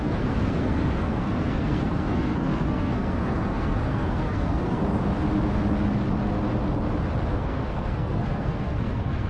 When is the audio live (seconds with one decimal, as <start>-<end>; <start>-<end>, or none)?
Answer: 4.8-7.3